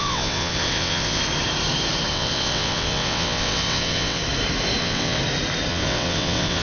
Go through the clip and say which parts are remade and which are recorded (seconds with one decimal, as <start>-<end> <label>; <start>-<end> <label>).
0.0-1.2 remade; 1.2-2.1 recorded; 2.1-4.2 remade; 4.2-4.8 recorded; 4.8-5.2 remade; 5.2-5.7 recorded; 5.7-6.6 remade

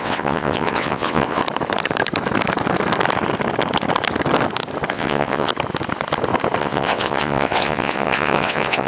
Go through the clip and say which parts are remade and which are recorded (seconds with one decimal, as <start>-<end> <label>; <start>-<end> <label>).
0.0-1.4 remade; 1.4-4.9 recorded; 4.9-5.5 remade; 5.5-6.6 recorded; 6.6-8.9 remade

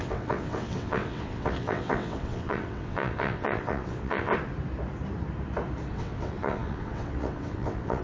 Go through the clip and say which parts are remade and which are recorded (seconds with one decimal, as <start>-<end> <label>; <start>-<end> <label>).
0.0-4.3 remade; 4.3-5.9 recorded; 5.9-8.0 remade

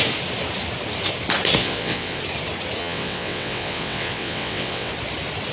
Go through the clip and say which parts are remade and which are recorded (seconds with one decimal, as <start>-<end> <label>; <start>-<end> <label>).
0.0-1.6 recorded; 1.6-2.2 remade; 2.2-2.8 recorded; 2.8-4.9 remade; 4.9-5.5 recorded

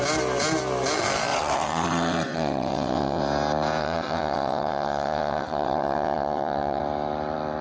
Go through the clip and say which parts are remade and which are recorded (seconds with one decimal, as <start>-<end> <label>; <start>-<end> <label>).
0.0-1.3 recorded; 1.3-3.2 remade; 3.2-3.8 recorded; 3.8-6.8 remade; 6.8-7.6 recorded

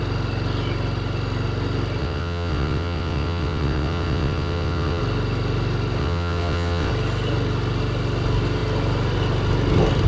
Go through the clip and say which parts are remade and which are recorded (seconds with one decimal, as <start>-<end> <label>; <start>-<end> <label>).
0.0-2.0 recorded; 2.0-5.0 remade; 5.0-6.0 recorded; 6.0-6.9 remade; 6.9-10.1 recorded